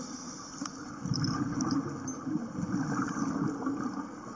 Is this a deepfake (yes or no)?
no